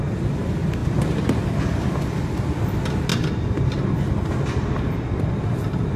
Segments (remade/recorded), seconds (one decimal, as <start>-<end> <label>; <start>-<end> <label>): 0.0-6.0 recorded